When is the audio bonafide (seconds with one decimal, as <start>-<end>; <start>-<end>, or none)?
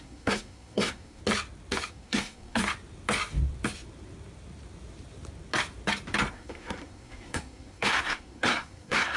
1.2-1.9; 2.6-6.3